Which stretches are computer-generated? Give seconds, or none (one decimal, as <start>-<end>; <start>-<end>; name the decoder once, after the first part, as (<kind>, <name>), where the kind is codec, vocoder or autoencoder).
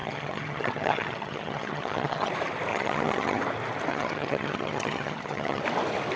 0.0-2.3 (vocoder, HiFi-GAN); 2.7-3.4; 3.9-5.6